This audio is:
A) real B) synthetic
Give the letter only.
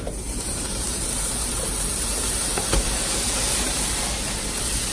B